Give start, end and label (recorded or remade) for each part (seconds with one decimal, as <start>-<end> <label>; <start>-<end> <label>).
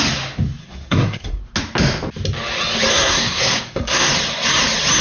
0.0-0.6 recorded; 0.6-1.4 remade; 1.4-2.9 recorded; 2.9-4.1 remade; 4.1-5.0 recorded